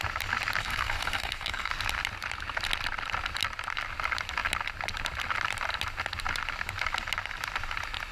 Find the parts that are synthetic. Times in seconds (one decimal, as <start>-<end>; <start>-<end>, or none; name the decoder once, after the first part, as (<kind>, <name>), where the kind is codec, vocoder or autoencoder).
0.6-1.7 (codec, SNAC)